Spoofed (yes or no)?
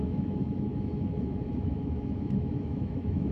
yes